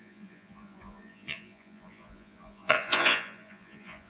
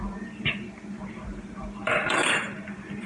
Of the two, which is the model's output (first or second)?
first